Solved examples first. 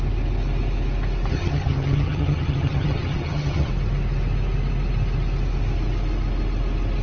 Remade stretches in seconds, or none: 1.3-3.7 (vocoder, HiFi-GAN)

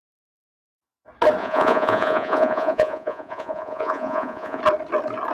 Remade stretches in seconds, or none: 1.4-4.6 (vocoder, Vocos)

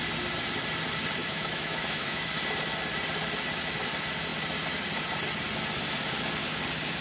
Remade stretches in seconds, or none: 1.2-2.2 (autoencoder, DAC-VAE)